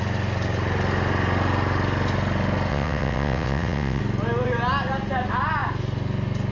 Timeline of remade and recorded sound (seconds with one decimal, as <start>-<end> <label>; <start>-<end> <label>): 0.0-2.7 recorded; 2.7-4.0 remade; 4.0-6.5 recorded